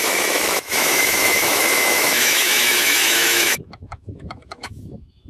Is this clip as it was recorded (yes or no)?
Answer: no